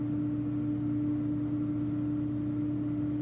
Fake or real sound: real